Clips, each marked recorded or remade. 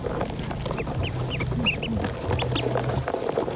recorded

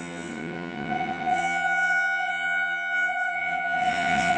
remade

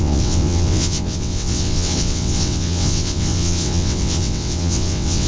remade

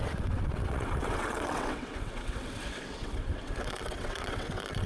remade